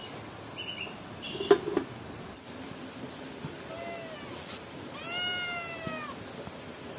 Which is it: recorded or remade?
recorded